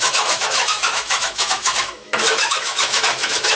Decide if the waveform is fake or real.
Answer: fake